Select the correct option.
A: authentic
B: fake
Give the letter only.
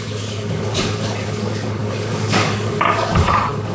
B